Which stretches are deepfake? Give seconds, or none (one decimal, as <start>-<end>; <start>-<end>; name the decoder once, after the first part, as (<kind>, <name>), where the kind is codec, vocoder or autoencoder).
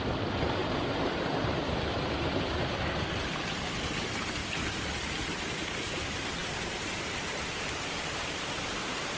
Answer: none